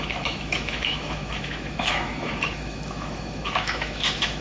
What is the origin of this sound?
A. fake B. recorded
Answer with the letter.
A